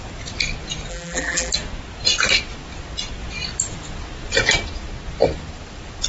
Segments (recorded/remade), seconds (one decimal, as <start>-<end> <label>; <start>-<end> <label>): 0.0-0.9 recorded; 0.9-1.5 remade; 1.5-6.1 recorded